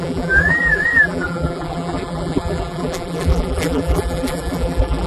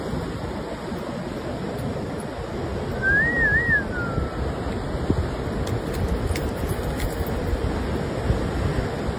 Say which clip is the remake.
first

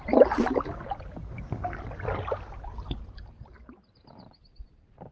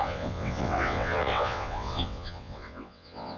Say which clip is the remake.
second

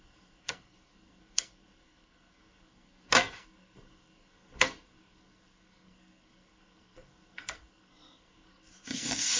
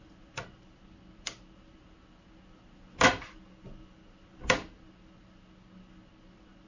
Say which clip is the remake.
first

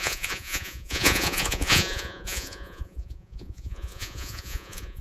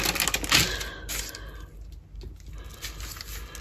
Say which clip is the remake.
first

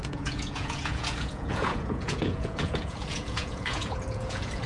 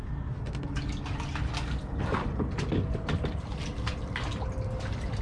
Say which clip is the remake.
first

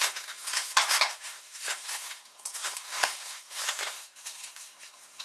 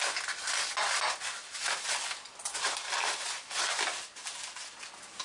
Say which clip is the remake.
first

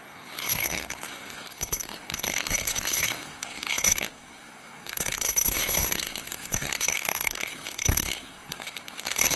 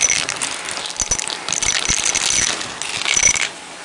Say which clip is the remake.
first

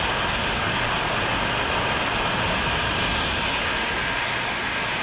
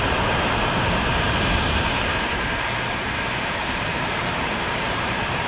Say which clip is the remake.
second